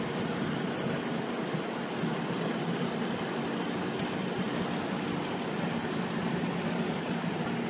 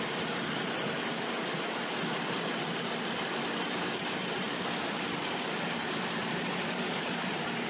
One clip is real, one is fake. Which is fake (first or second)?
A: second